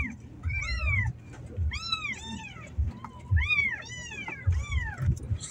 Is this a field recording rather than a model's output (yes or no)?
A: no